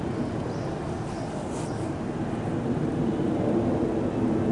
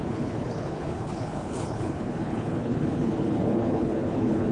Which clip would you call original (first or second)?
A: first